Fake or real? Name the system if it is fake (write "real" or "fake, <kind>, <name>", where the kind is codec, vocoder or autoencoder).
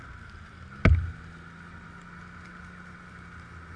real